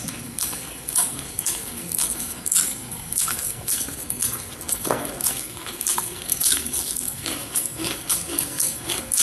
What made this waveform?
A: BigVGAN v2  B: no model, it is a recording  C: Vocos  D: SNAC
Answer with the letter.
D